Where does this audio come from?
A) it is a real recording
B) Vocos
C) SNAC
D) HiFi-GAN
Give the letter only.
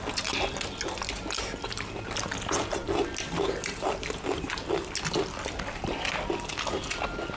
A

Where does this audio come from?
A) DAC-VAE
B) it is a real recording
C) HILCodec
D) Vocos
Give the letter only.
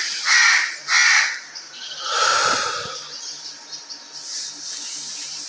B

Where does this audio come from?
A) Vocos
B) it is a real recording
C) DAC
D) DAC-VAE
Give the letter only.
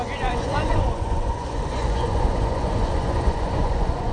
A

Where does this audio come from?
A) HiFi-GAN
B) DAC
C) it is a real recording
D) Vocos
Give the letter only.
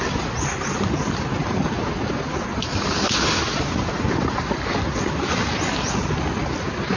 C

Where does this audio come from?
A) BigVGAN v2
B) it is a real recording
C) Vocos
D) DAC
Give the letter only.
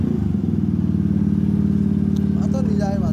B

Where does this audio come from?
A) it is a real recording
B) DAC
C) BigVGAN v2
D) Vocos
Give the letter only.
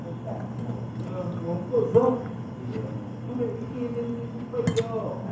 A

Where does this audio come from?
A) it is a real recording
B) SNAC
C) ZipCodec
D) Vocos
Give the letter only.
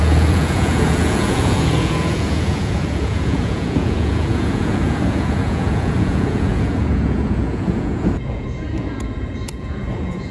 D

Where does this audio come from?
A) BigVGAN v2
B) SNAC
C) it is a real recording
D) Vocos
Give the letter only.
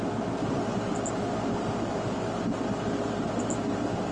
C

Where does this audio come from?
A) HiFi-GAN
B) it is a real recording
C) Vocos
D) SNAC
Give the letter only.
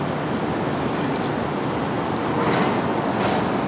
B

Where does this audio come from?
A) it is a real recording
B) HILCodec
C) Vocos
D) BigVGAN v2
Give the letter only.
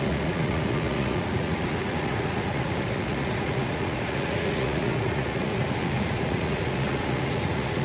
C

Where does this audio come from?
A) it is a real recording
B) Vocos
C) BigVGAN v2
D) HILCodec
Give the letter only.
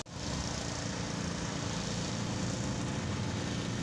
A